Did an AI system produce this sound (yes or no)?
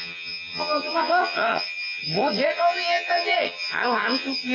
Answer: yes